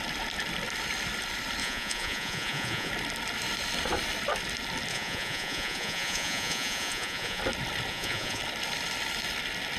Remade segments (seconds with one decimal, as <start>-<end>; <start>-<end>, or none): 1.6-2.9; 4.9-7.4; 7.9-8.4